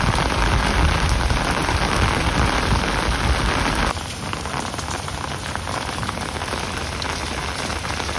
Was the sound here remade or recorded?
recorded